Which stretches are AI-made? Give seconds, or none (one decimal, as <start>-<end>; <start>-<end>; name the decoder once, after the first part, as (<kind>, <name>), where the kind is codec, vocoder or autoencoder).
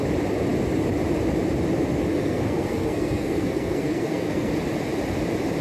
2.1-4.5 (codec, SNAC)